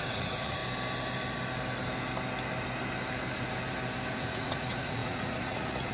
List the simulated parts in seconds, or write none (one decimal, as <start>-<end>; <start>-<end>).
0.0-0.6; 4.1-5.9